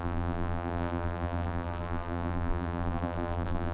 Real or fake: fake